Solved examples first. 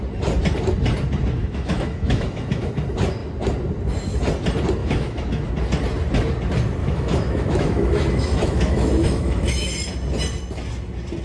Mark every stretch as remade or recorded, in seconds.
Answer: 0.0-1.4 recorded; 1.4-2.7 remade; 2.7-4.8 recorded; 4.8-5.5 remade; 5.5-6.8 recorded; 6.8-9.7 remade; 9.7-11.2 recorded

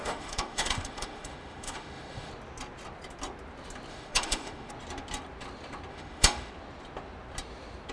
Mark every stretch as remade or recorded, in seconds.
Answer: 0.0-2.3 remade; 2.3-3.9 recorded; 3.9-4.7 remade; 4.7-5.9 recorded; 5.9-6.5 remade; 6.5-7.9 recorded

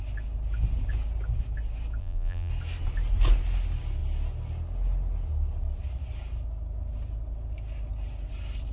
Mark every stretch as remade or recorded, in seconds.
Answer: 0.0-2.0 recorded; 2.0-2.5 remade; 2.5-8.7 recorded

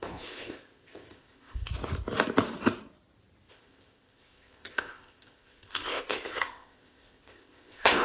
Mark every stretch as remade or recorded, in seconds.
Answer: 0.0-1.7 remade; 1.7-3.5 recorded; 3.5-8.0 remade

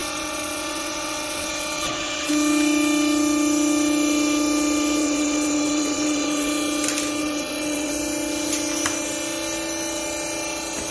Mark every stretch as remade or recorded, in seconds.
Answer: 0.0-2.3 remade; 2.3-5.0 recorded; 5.0-6.5 remade; 6.5-7.2 recorded; 7.2-7.9 remade; 7.9-10.9 recorded

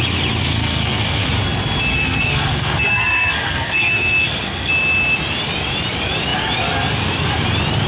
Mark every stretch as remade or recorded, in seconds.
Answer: 0.0-0.4 recorded; 0.4-1.2 remade; 1.2-1.9 recorded; 1.9-4.7 remade; 4.7-7.9 recorded

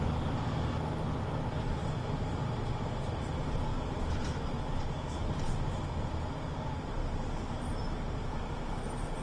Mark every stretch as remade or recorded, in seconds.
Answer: 0.0-1.8 recorded; 1.8-3.2 remade; 3.2-3.7 recorded; 3.7-4.4 remade; 4.4-5.2 recorded; 5.2-5.8 remade; 5.8-7.7 recorded; 7.7-9.2 remade

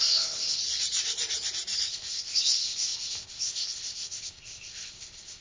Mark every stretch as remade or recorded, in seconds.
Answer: 0.0-0.6 remade; 0.6-1.9 recorded; 1.9-5.4 remade